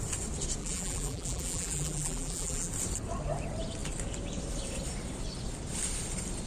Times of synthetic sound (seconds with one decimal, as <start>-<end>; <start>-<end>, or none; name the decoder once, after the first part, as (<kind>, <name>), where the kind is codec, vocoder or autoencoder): 0.6-2.7 (vocoder, BigVGAN v2)